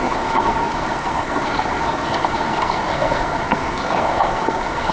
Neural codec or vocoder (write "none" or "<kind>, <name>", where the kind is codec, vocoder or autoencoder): codec, SNAC